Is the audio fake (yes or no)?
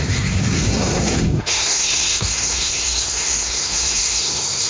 yes